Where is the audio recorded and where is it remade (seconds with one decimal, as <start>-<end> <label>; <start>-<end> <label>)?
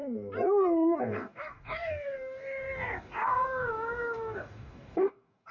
0.0-1.0 recorded; 1.0-5.5 remade